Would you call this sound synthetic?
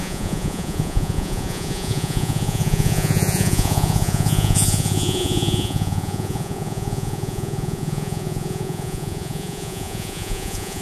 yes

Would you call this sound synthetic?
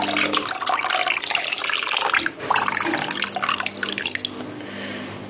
no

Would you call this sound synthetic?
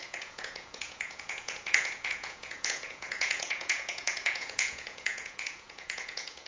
yes